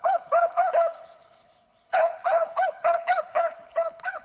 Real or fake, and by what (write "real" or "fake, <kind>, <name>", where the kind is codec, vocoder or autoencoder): fake, codec, HILCodec